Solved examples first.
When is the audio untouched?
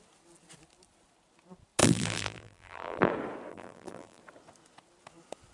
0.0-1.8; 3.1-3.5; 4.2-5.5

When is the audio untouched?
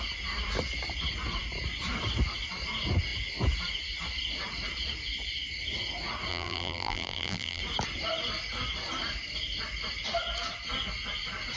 0.0-6.3; 7.6-11.6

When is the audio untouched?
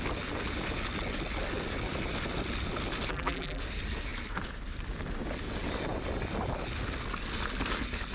0.0-3.1; 3.6-8.1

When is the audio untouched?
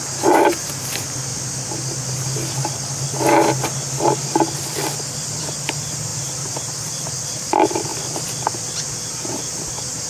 1.3-5.4; 7.9-8.8